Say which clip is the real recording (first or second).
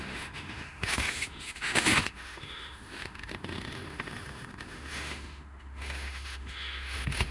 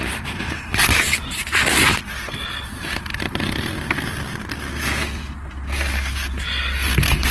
second